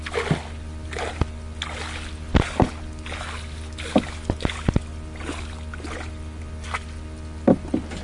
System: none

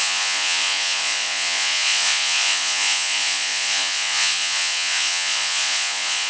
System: vocoder, Vocos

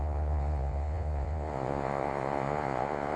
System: vocoder, Vocos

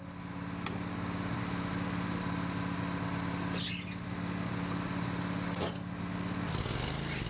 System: none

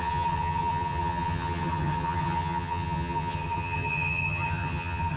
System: vocoder, HiFi-GAN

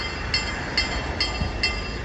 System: none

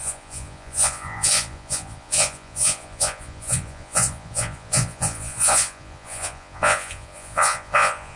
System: vocoder, Vocos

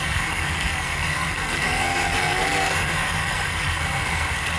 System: codec, SNAC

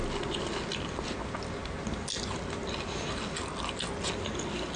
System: none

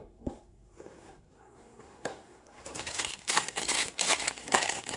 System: codec, SNAC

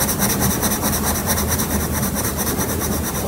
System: vocoder, BigVGAN v2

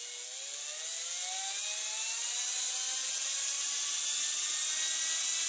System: none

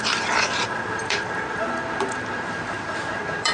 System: vocoder, BigVGAN v2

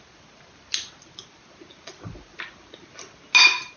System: none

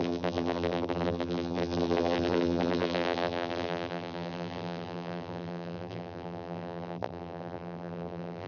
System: vocoder, BigVGAN v2